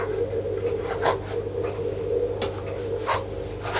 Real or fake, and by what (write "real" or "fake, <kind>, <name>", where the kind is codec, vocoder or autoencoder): real